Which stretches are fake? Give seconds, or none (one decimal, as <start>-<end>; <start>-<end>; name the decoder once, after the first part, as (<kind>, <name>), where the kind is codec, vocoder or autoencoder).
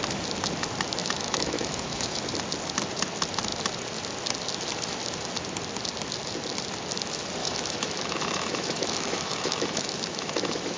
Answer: 1.0-2.2 (autoencoder, DAC-VAE); 7.4-10.8